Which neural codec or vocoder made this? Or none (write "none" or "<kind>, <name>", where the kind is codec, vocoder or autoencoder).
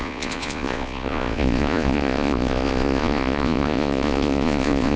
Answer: vocoder, Vocos